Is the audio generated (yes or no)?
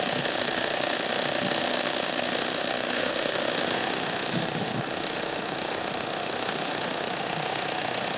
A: yes